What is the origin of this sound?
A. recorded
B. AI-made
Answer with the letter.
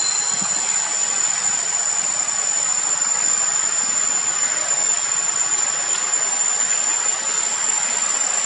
A